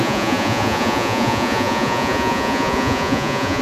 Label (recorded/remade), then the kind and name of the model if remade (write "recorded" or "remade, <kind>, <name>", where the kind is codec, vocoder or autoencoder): remade, vocoder, Vocos